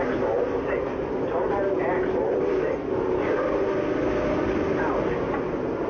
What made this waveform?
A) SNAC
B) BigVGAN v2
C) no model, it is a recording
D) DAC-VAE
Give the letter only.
C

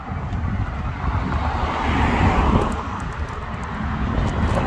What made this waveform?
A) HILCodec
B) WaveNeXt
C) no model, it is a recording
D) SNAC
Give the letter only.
C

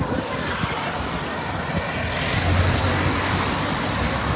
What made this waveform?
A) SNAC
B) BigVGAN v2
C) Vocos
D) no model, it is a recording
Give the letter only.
D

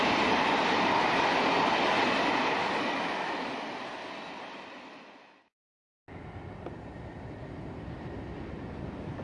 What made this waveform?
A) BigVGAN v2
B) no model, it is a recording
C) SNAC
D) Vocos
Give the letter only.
B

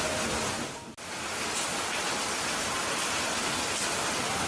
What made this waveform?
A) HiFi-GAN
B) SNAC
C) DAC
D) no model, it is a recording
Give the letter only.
D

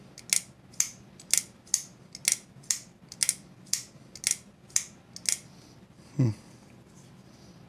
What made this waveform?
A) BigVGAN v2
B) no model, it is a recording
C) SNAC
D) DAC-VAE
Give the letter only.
B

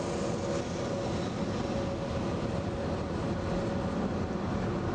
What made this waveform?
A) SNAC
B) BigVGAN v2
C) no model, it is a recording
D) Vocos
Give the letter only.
C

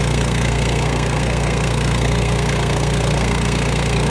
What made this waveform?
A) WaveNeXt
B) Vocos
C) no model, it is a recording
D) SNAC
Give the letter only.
D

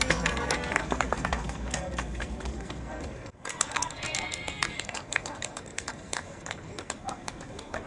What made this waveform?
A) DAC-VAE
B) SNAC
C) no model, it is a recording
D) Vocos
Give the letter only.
B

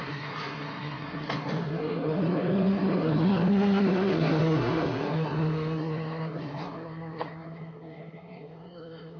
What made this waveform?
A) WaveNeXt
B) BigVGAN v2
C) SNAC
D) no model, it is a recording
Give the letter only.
C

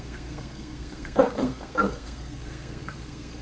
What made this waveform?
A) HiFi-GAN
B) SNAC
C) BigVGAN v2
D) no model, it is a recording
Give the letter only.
B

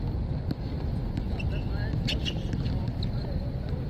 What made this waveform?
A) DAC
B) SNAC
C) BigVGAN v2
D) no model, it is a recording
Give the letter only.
D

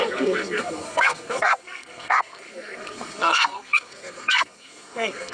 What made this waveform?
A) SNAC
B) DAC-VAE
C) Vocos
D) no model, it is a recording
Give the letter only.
A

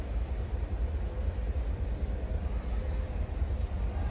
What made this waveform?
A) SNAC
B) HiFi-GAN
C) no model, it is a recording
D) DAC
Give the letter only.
C